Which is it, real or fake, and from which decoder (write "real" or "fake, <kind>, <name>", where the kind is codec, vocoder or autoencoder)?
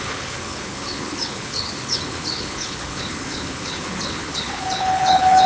fake, codec, HILCodec